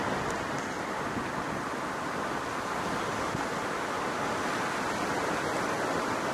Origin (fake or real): real